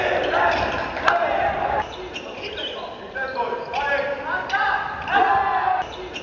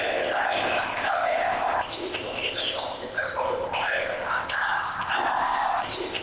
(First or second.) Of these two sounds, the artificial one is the second